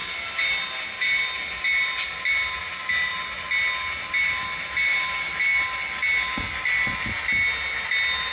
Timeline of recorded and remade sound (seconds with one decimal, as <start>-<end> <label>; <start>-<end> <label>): 0.0-2.0 remade; 2.0-4.9 recorded; 4.9-5.4 remade; 5.4-8.3 recorded